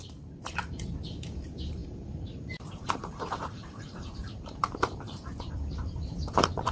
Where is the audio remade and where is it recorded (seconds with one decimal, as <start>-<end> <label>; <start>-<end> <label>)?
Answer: 0.0-6.7 remade